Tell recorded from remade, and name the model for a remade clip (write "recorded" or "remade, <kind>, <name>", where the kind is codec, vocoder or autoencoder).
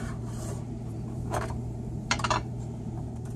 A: remade, vocoder, BigVGAN v2